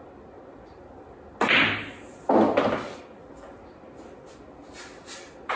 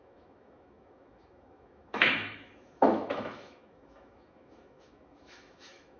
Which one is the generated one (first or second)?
second